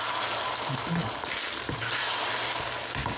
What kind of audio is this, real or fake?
real